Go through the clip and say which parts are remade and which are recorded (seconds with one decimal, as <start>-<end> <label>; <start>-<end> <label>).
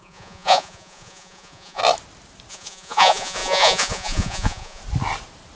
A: 0.0-1.8 remade; 1.8-2.5 recorded; 2.5-4.8 remade; 4.8-5.6 recorded